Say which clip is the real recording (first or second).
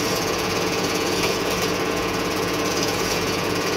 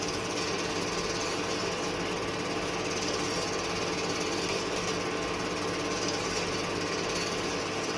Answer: second